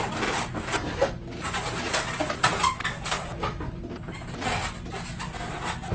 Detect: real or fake real